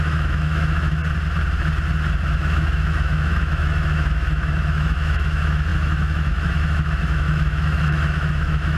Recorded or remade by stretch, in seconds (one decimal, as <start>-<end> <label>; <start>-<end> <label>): 0.0-1.0 remade; 1.0-2.4 recorded; 2.4-8.8 remade